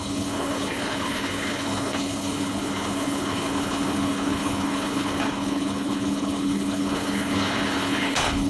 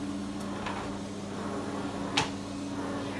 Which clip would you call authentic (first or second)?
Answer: second